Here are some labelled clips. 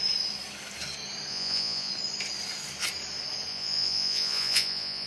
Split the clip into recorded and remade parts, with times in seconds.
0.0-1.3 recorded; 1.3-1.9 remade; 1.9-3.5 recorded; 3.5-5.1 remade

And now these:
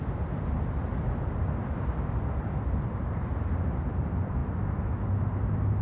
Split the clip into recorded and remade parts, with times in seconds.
0.0-0.9 remade; 0.9-2.2 recorded; 2.2-4.4 remade; 4.4-5.8 recorded

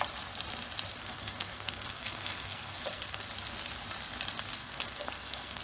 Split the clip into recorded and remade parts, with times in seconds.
0.0-0.9 recorded; 0.9-3.3 remade; 3.3-4.6 recorded; 4.6-5.6 remade

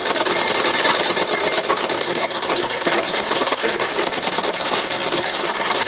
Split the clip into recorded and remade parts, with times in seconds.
0.0-2.0 recorded; 2.0-3.9 remade; 3.9-4.5 recorded; 4.5-5.9 remade

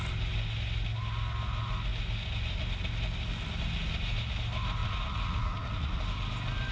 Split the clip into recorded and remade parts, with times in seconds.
0.0-4.8 recorded; 4.8-6.0 remade; 6.0-6.7 recorded

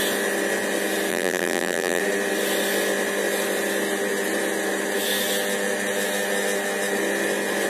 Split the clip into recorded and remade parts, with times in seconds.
0.0-1.1 recorded; 1.1-2.0 remade; 2.0-7.7 recorded